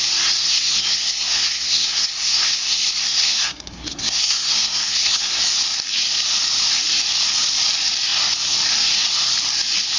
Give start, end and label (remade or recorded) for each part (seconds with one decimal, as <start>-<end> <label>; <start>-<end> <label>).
0.0-0.4 recorded; 0.4-5.4 remade; 5.4-10.0 recorded